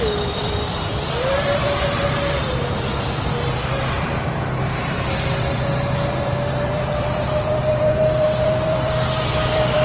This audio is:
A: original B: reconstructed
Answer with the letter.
B